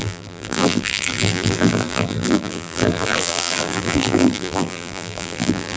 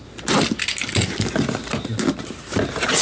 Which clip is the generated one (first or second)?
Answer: first